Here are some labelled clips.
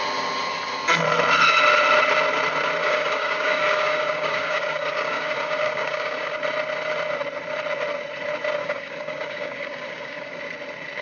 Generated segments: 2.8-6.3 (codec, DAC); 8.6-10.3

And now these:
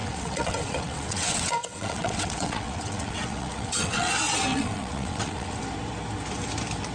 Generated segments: 0.0-4.1 (vocoder, WaveNeXt); 4.5-5.6

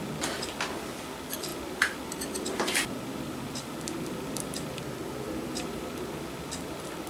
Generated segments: 1.5-5.8 (vocoder, BigVGAN v2)

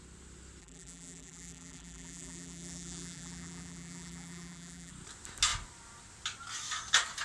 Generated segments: 0.6-4.9 (vocoder, BigVGAN v2)

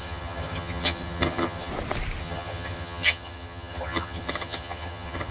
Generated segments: 0.0-1.7 (vocoder, HiFi-GAN); 2.2-5.3

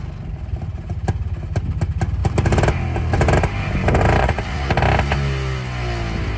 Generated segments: 4.2-4.7 (vocoder, Vocos)

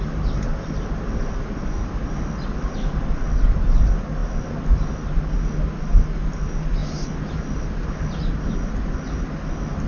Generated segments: none